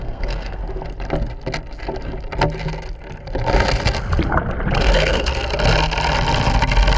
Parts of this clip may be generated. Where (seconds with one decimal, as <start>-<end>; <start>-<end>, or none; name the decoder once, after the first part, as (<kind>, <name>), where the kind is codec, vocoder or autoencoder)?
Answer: 0.0-0.6 (codec, SNAC); 4.8-5.3